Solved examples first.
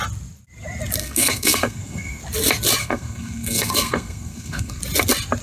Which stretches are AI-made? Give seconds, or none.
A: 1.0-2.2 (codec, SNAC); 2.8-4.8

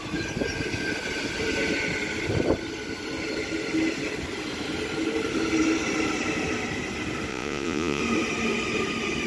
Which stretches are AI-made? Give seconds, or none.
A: 7.3-8.0 (vocoder, Vocos)

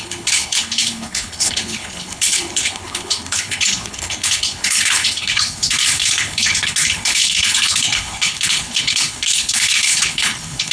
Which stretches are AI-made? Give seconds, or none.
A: 0.0-10.7 (codec, HILCodec)

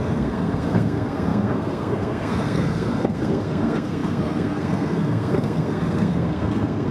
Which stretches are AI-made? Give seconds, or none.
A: 0.0-6.9 (codec, SNAC)

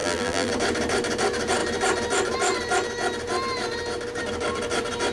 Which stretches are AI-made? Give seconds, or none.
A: 0.0-0.5 (vocoder, BigVGAN v2)

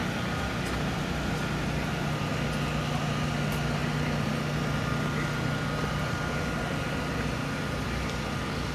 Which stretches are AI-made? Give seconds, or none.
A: none

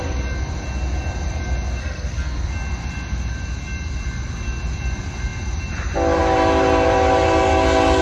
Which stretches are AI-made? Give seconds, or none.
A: 1.8-2.5 (codec, SNAC)